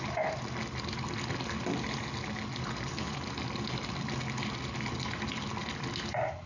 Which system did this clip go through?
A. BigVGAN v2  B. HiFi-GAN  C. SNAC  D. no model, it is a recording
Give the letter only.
D